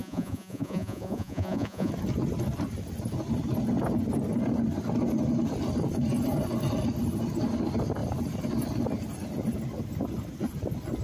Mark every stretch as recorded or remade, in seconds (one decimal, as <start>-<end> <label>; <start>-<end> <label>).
0.0-1.9 remade; 1.9-11.0 recorded